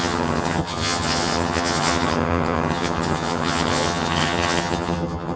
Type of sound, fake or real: fake